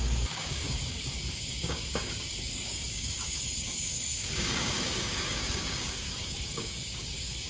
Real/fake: fake